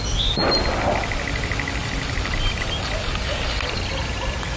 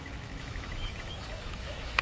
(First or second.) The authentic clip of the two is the first